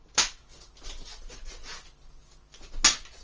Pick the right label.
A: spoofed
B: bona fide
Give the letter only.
B